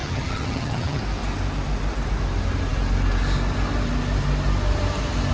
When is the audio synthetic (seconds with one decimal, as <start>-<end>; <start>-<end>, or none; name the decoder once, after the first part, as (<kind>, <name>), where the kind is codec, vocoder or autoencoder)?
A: 0.0-1.0 (vocoder, HiFi-GAN)